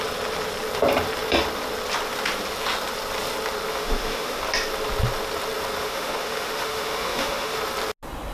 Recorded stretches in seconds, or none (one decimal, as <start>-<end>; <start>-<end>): 0.0-3.7; 4.4-5.8; 7.6-8.3